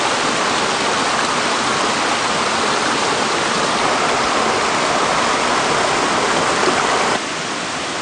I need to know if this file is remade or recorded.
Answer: recorded